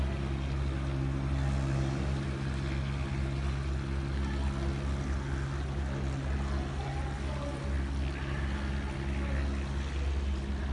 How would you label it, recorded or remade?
recorded